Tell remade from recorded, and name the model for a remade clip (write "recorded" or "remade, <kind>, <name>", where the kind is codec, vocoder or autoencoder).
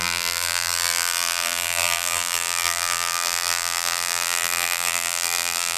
remade, vocoder, BigVGAN v2